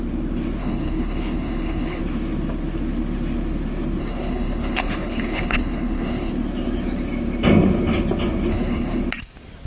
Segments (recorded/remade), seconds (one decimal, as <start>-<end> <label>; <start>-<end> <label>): 0.0-0.6 recorded; 0.6-2.0 remade; 2.0-4.0 recorded; 4.0-6.3 remade; 6.3-8.5 recorded; 8.5-9.0 remade; 9.0-9.7 recorded